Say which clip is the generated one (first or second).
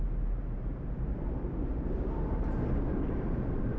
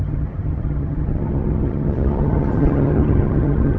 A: second